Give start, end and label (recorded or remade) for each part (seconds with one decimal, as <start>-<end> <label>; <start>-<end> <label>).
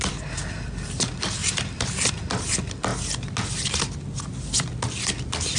0.0-1.4 recorded; 1.4-2.1 remade; 2.1-5.6 recorded